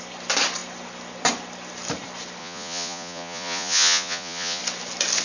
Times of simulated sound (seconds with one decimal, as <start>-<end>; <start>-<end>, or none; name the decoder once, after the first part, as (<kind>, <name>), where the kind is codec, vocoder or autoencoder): 2.4-4.6 (vocoder, Vocos)